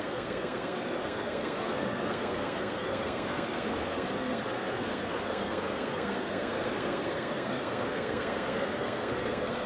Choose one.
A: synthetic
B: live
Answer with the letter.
A